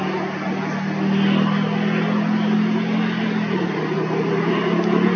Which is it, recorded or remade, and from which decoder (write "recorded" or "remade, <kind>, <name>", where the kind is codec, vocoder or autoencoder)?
recorded